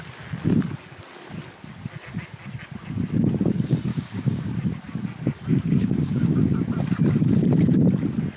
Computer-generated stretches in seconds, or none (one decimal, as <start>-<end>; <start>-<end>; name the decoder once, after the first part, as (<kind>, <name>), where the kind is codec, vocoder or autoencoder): 3.9-4.5 (codec, DAC); 5.5-6.7